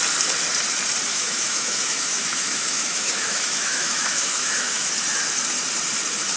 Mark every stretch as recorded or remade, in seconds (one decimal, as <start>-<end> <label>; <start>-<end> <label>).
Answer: 0.0-1.1 recorded; 1.1-4.9 remade; 4.9-6.4 recorded